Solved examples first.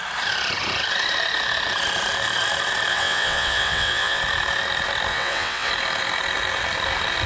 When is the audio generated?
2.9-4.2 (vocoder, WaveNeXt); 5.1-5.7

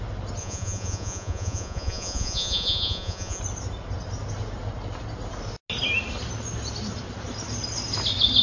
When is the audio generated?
0.4-3.4 (vocoder, Vocos)

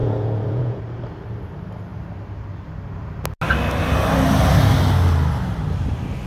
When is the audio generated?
0.0-0.8 (vocoder, Vocos)